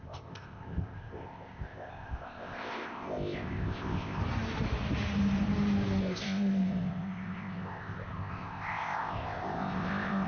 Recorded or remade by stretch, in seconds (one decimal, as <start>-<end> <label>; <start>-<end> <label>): 0.0-4.2 remade; 4.2-6.0 recorded; 6.0-10.3 remade